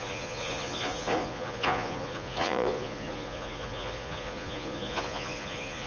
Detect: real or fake fake